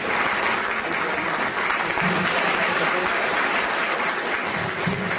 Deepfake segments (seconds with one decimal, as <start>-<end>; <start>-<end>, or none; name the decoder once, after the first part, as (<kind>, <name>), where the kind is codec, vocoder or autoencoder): none